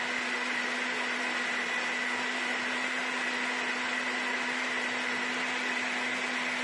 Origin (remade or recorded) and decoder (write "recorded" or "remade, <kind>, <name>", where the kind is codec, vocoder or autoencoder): recorded